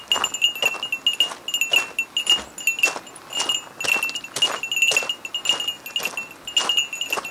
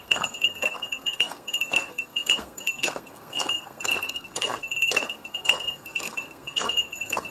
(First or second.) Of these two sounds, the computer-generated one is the second